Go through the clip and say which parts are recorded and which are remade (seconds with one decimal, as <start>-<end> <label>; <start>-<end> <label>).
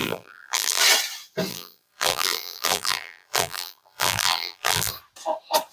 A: 0.0-0.8 remade; 0.8-1.5 recorded; 1.5-4.9 remade; 4.9-5.7 recorded